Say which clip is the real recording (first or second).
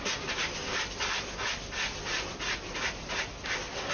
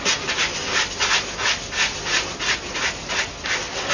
second